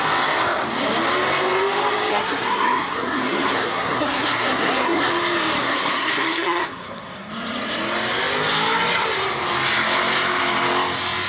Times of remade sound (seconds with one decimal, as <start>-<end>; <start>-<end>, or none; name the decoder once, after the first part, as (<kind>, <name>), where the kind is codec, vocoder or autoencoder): 2.1-5.1 (codec, SNAC); 5.6-7.3

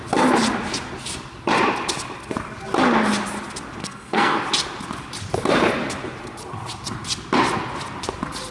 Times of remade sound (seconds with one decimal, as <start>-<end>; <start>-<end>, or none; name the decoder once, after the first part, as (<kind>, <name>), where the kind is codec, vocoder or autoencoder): 3.8-4.4 (codec, SNAC)

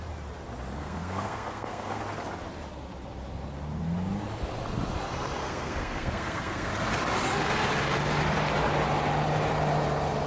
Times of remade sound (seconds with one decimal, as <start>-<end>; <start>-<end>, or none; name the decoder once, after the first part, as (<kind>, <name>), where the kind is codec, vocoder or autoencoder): 0.8-2.0 (codec, SNAC); 5.4-6.7

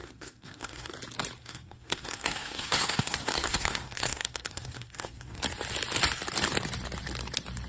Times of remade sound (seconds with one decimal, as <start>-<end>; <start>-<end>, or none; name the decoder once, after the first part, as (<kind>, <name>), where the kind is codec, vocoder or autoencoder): 0.0-0.9 (codec, SNAC); 1.4-5.4

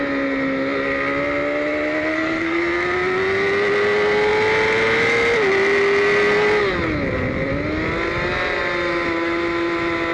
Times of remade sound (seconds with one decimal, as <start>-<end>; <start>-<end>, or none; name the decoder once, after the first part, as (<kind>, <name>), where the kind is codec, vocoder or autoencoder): 2.1-2.6 (codec, SNAC)

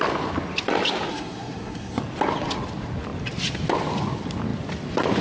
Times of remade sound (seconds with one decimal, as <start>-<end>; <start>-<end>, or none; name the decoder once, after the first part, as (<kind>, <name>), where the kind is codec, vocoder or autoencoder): 1.1-2.0 (codec, SNAC)